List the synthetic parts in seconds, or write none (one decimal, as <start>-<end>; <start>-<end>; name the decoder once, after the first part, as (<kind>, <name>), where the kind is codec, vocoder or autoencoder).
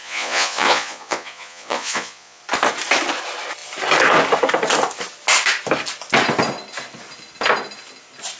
0.0-2.4 (vocoder, Vocos)